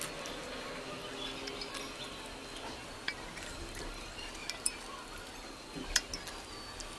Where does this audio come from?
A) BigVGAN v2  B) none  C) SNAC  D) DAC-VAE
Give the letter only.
B